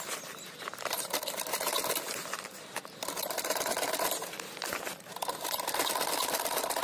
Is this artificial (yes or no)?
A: no